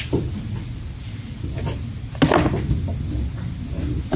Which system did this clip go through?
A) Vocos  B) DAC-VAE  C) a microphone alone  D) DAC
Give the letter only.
C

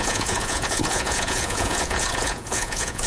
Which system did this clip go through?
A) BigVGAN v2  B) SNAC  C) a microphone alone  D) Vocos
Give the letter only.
D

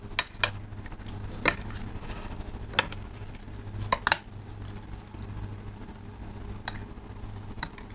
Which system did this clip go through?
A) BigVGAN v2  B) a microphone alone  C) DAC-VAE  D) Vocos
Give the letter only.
B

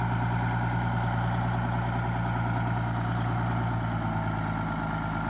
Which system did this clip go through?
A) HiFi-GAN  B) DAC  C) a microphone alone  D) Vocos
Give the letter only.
C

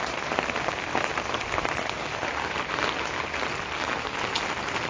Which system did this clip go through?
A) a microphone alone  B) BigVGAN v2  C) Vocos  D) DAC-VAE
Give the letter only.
A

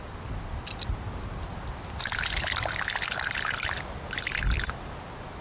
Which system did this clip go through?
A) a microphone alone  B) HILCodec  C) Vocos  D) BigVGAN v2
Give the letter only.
A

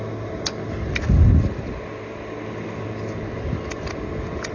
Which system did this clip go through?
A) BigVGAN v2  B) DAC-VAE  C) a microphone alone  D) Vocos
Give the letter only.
C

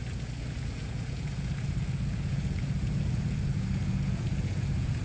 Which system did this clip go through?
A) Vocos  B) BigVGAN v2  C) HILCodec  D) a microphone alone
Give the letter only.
A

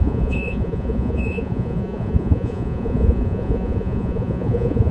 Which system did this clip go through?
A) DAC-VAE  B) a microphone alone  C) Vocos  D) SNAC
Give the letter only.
C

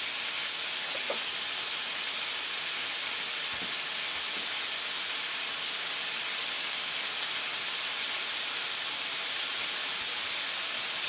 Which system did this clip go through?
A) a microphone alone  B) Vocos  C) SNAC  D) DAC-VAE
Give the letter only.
A